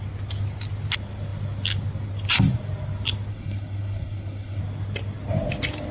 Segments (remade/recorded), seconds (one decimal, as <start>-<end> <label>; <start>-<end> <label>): 0.0-3.3 recorded; 3.3-4.6 remade; 4.6-5.9 recorded